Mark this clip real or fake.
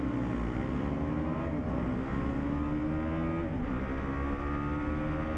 real